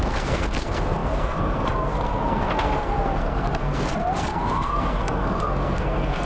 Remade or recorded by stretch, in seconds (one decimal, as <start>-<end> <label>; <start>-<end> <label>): 0.0-6.2 remade